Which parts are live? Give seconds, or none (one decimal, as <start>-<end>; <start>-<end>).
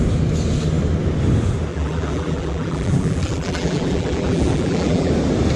0.0-1.7; 5.1-5.6